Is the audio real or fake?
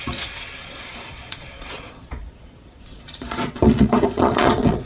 fake